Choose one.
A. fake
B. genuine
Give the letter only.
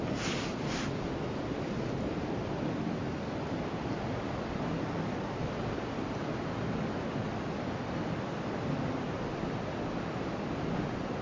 B